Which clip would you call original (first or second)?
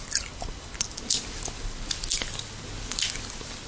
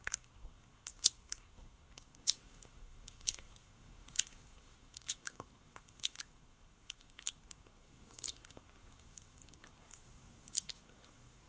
first